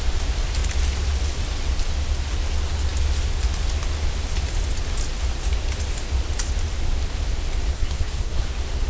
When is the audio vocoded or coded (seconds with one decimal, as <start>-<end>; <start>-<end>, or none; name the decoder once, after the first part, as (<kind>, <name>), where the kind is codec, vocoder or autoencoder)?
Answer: 7.7-8.5 (codec, SNAC)